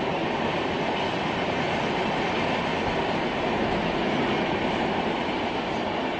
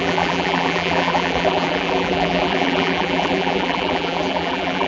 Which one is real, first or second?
first